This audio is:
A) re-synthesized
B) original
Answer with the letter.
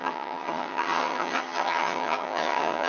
A